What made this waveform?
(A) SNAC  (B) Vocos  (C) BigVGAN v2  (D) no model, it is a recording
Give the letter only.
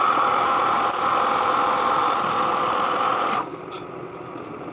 D